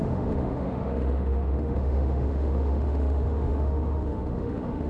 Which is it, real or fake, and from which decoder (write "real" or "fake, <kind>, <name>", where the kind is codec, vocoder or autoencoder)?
fake, autoencoder, DAC-VAE